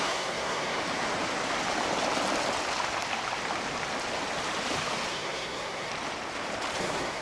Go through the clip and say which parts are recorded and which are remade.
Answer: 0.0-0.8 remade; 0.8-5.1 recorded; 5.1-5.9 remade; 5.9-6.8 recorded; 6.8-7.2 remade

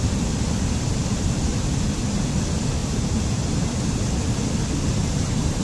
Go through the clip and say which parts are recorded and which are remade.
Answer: 0.0-2.8 recorded; 2.8-3.5 remade; 3.5-5.6 recorded

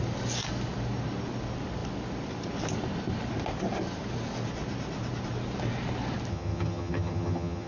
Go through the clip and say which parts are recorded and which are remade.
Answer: 0.0-6.3 recorded; 6.3-7.7 remade

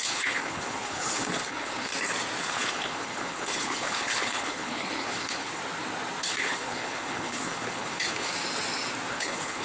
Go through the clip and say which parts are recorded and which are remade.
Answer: 0.0-1.9 remade; 1.9-2.4 recorded; 2.4-5.6 remade; 5.6-6.2 recorded; 6.2-8.3 remade; 8.3-9.1 recorded; 9.1-9.6 remade

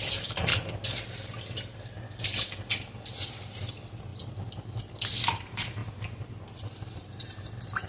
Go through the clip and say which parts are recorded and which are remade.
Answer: 0.0-5.8 recorded; 5.8-7.1 remade; 7.1-7.9 recorded

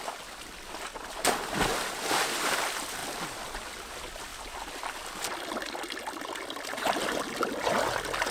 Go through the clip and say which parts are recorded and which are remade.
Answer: 0.0-8.3 recorded

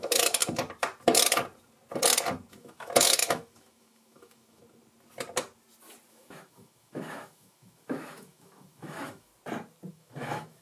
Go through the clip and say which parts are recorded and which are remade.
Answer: 0.0-0.4 remade; 0.4-2.5 recorded; 2.5-4.6 remade; 4.6-6.1 recorded; 6.1-9.3 remade; 9.3-9.9 recorded; 9.9-10.6 remade

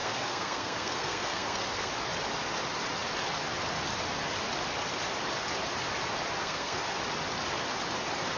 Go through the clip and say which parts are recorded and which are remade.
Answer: 0.0-1.9 remade; 1.9-6.4 recorded; 6.4-7.0 remade; 7.0-8.4 recorded